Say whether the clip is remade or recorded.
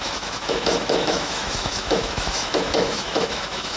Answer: remade